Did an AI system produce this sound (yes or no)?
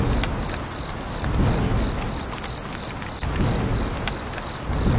no